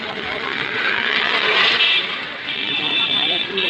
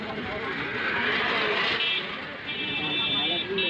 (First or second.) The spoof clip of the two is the first